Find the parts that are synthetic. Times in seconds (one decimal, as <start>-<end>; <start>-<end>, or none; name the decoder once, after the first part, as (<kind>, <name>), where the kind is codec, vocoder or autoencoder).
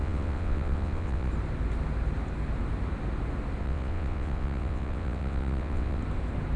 0.0-1.3 (vocoder, WaveNeXt); 3.6-6.0